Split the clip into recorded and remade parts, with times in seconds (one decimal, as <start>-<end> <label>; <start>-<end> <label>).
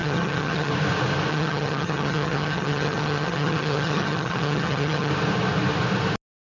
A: 0.0-0.7 remade; 0.7-1.3 recorded; 1.3-5.1 remade; 5.1-6.4 recorded